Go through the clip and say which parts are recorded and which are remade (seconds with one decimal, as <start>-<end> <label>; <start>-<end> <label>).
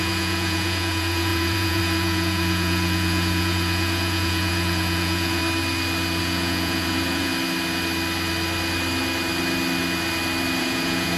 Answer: 0.0-5.4 remade; 5.4-6.2 recorded; 6.2-7.3 remade; 7.3-10.6 recorded; 10.6-11.2 remade